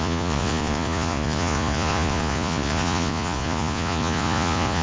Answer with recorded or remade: remade